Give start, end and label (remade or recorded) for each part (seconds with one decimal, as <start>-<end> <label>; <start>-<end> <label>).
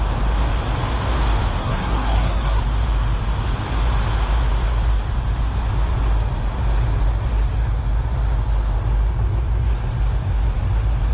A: 0.0-1.6 recorded; 1.6-2.6 remade; 2.6-11.1 recorded